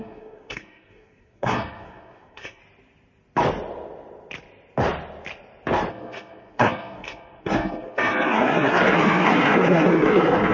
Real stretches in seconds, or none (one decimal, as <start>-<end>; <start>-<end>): 2.6-5.9